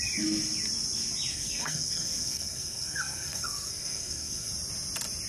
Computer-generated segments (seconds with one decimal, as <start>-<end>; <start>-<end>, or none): 1.3-4.5